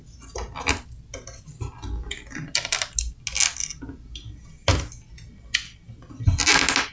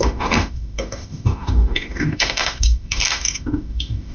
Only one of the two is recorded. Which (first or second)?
first